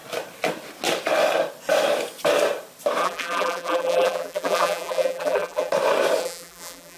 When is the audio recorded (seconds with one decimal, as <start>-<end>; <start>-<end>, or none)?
0.0-3.0; 5.7-6.2